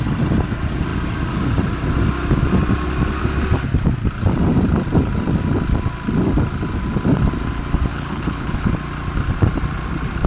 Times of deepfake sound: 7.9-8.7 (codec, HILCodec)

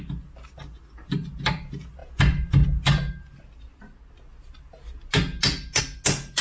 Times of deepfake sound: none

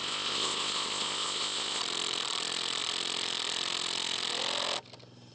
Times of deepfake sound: 0.0-1.8 (codec, ZipCodec)